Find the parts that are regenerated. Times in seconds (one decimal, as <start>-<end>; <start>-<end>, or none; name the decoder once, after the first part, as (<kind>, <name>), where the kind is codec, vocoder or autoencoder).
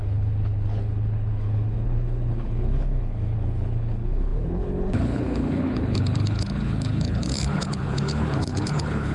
0.0-9.1 (codec, HILCodec)